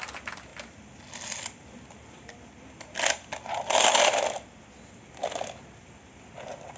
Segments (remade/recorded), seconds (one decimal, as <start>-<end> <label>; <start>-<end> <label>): 0.0-6.8 recorded